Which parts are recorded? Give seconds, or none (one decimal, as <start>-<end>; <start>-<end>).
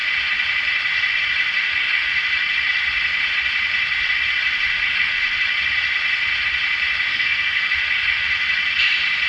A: 0.0-7.1; 7.7-9.3